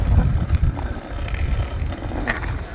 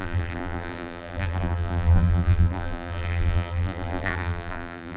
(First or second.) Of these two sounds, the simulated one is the second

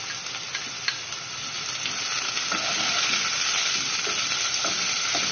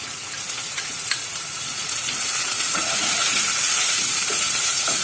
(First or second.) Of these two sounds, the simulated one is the second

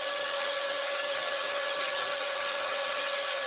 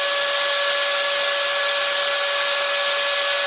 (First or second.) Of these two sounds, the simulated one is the first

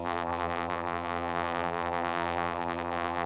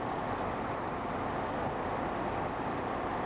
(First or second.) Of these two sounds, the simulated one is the first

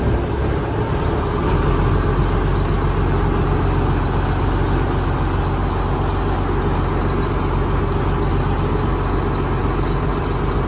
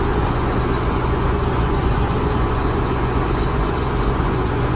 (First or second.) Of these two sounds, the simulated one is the second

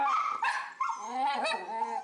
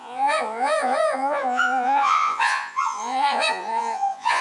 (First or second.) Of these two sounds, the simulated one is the second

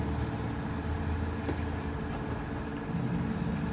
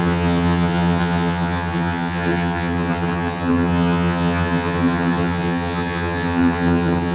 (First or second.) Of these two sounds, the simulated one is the second